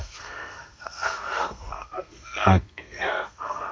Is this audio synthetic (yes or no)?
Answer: yes